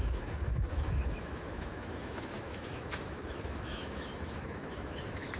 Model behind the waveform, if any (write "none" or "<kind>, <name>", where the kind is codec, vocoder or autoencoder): autoencoder, DAC-VAE